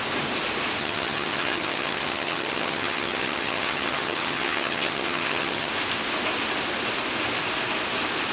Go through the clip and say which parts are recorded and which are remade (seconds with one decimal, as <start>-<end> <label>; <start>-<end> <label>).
0.0-0.8 recorded; 0.8-5.7 remade; 5.7-8.3 recorded